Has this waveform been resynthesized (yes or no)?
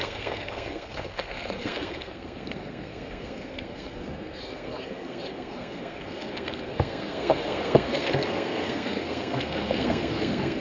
yes